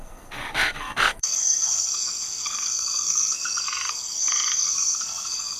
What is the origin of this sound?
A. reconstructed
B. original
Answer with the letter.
A